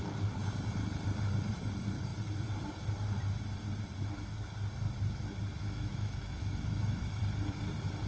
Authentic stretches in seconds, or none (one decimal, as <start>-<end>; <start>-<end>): 0.0-5.6; 7.2-8.1